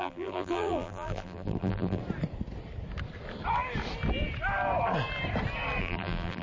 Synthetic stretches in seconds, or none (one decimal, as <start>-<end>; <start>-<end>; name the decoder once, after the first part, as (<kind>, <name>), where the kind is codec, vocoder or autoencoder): 0.0-2.0 (vocoder, BigVGAN v2); 5.8-6.4